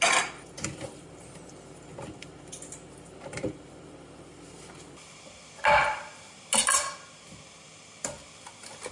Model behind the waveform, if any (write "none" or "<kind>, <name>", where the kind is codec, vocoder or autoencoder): none